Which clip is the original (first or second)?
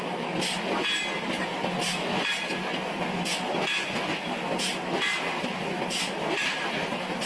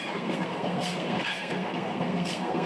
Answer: first